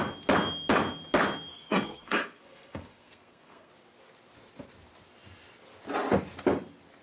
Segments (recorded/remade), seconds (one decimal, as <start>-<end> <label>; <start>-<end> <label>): 0.0-1.5 recorded; 1.5-3.7 remade; 3.7-7.0 recorded